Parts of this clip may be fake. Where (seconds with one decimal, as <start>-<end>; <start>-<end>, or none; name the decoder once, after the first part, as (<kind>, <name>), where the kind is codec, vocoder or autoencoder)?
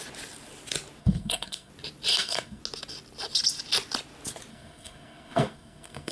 1.0-1.7 (codec, SNAC); 2.1-2.6; 4.5-6.1